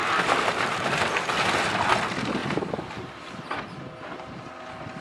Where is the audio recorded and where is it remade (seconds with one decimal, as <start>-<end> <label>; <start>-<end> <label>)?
0.0-0.9 remade; 0.9-2.4 recorded; 2.4-3.6 remade; 3.6-5.0 recorded

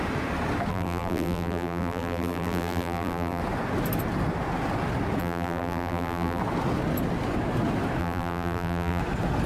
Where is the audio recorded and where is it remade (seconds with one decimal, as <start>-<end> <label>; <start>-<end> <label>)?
0.0-0.7 recorded; 0.7-3.4 remade; 3.4-5.2 recorded; 5.2-6.4 remade; 6.4-8.0 recorded; 8.0-9.0 remade; 9.0-9.5 recorded

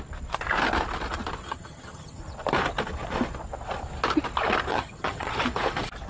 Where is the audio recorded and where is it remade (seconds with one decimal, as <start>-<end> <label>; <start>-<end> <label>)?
0.0-1.4 recorded; 1.4-2.2 remade; 2.2-4.7 recorded; 4.7-5.3 remade; 5.3-6.1 recorded

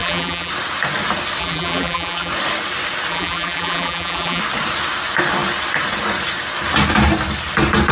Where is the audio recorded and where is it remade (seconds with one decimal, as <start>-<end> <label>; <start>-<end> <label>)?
0.0-0.5 remade; 0.5-1.4 recorded; 1.4-2.3 remade; 2.3-3.1 recorded; 3.1-4.4 remade; 4.4-7.9 recorded

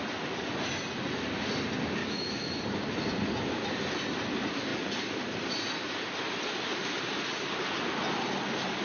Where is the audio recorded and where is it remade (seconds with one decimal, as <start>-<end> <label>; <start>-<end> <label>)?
0.0-2.0 recorded; 2.0-2.6 remade; 2.6-8.8 recorded

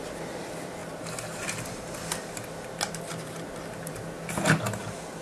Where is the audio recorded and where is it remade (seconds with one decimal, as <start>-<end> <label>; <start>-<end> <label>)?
0.0-5.2 recorded

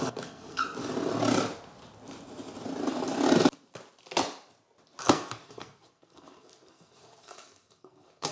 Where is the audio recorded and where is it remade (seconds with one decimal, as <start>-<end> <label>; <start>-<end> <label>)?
0.0-0.6 remade; 0.6-5.0 recorded; 5.0-8.3 remade

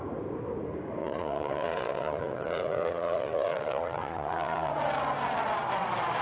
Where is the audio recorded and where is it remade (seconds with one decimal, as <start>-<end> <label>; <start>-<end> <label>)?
0.0-1.0 recorded; 1.0-4.7 remade; 4.7-6.2 recorded